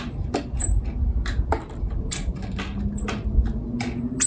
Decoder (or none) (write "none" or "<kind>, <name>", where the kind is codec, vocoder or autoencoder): none